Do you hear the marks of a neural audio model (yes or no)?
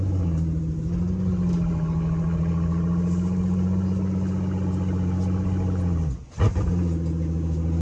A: no